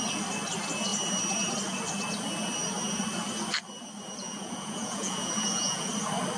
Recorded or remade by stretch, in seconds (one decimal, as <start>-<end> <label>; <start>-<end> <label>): 0.0-4.2 recorded; 4.2-5.9 remade; 5.9-6.4 recorded